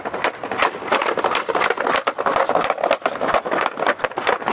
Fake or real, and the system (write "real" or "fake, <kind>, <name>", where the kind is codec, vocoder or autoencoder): real